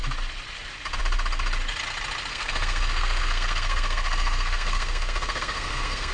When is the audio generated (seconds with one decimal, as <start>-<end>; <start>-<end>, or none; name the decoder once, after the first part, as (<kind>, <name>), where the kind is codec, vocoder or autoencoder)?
2.3-6.1 (codec, SNAC)